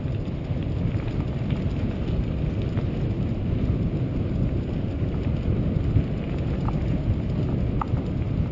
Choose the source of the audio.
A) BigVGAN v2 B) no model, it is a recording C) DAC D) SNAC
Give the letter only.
B